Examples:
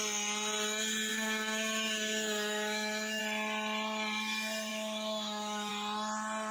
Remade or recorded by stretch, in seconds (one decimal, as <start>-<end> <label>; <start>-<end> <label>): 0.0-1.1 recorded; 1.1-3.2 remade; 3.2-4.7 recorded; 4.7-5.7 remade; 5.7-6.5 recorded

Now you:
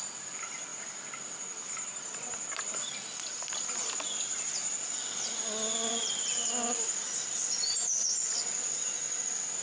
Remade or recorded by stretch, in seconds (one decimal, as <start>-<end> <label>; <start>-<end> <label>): 0.0-9.6 recorded

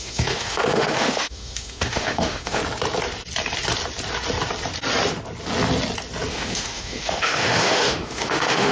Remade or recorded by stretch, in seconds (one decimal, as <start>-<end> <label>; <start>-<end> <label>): 0.0-2.6 remade; 2.6-6.3 recorded; 6.3-8.7 remade